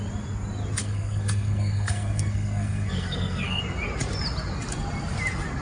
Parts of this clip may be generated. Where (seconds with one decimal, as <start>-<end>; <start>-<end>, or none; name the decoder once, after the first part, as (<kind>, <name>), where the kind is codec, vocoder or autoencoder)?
0.8-3.6 (codec, SNAC)